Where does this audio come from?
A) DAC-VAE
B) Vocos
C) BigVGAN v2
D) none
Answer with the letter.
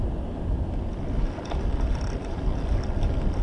D